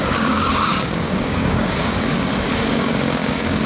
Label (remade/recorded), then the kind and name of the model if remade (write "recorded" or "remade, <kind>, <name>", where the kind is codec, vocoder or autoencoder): remade, codec, DAC